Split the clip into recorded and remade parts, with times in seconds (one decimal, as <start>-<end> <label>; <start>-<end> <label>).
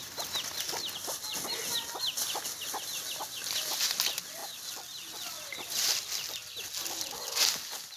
0.0-8.0 recorded